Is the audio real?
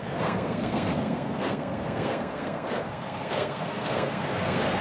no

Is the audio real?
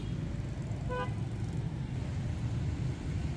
yes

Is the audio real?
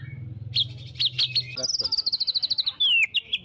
yes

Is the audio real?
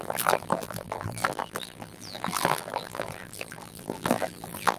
no